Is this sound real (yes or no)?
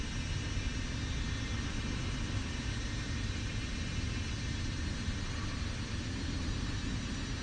yes